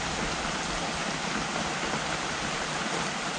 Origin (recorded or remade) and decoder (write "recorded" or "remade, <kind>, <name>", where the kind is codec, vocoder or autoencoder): recorded